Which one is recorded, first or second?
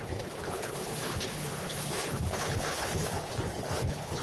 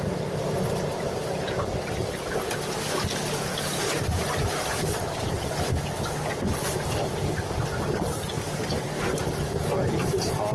second